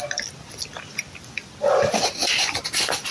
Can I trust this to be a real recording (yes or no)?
no